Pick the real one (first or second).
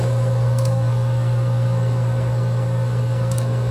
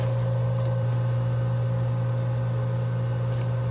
second